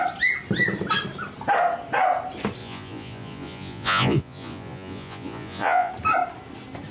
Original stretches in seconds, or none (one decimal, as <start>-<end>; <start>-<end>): 0.0-2.6; 5.9-6.9